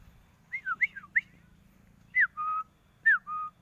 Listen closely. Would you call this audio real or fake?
real